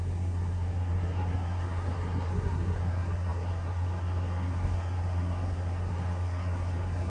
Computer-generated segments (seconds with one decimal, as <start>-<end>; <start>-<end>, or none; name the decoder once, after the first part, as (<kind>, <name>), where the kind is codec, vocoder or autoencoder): 0.0-7.1 (codec, SNAC)